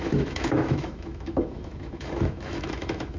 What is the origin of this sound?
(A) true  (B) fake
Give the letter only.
B